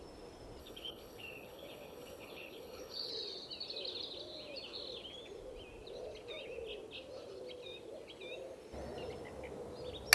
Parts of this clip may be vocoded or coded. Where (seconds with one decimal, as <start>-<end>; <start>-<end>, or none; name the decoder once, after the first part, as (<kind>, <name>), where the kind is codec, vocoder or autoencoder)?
0.6-3.1 (codec, HILCodec)